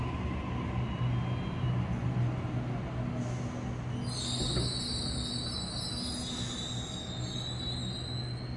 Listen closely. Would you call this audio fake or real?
real